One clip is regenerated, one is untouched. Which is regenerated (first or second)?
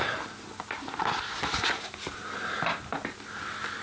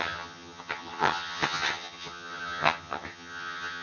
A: second